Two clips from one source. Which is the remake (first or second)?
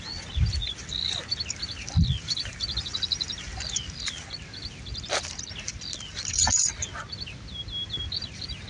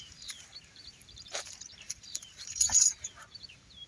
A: second